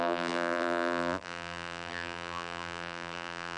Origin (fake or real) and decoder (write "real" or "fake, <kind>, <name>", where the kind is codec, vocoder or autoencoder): fake, vocoder, BigVGAN v2